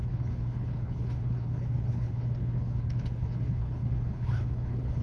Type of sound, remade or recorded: remade